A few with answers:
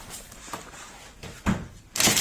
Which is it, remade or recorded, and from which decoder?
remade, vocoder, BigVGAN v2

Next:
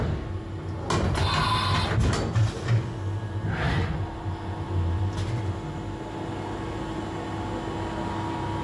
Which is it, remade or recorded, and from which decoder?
recorded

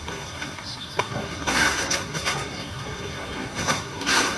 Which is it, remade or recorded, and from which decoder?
remade, codec, SNAC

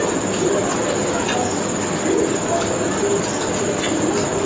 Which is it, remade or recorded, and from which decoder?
recorded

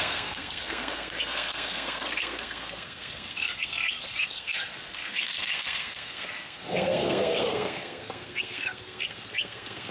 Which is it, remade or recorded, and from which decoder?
remade, codec, SNAC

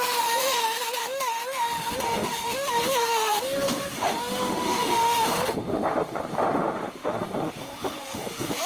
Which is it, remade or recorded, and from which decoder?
remade, autoencoder, DAC-VAE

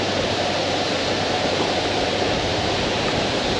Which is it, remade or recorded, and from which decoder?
remade, vocoder, BigVGAN v2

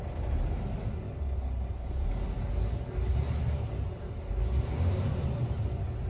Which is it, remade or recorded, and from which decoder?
recorded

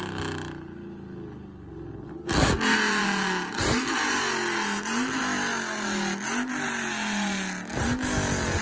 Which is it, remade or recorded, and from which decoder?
recorded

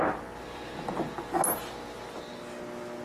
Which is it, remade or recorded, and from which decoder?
recorded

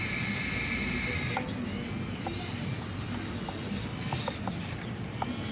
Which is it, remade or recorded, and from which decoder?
recorded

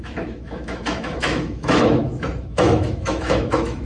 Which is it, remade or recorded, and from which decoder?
remade, autoencoder, DAC-VAE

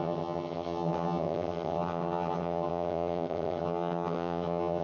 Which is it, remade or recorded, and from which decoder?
remade, vocoder, HiFi-GAN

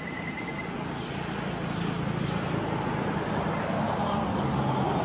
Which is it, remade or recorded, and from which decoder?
recorded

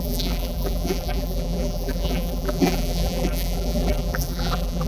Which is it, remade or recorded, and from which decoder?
remade, vocoder, BigVGAN v2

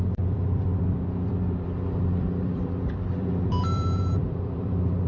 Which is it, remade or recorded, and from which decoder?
remade, vocoder, BigVGAN v2